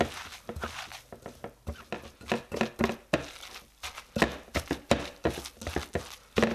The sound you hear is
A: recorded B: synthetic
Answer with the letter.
A